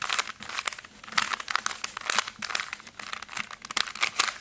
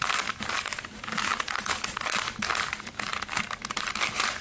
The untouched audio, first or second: first